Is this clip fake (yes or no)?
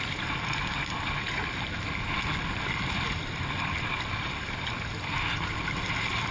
no